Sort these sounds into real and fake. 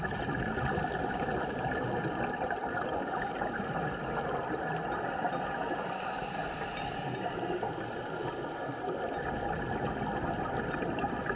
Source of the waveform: real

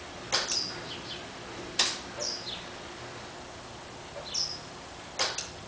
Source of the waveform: real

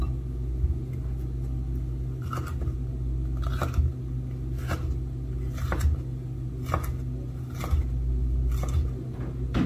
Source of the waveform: real